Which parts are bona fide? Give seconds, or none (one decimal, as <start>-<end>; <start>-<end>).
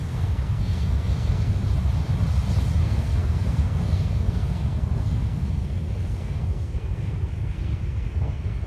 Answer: 1.6-2.8